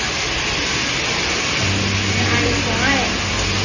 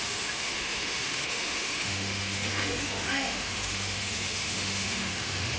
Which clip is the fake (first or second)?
second